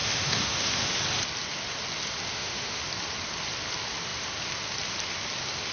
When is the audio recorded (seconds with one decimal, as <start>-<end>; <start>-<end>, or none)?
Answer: 1.0-2.3; 2.8-5.7